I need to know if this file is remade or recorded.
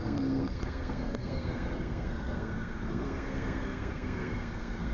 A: remade